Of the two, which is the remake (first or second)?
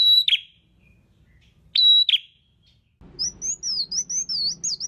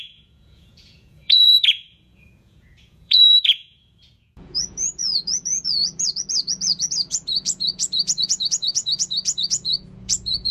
second